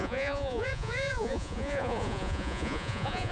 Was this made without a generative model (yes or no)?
no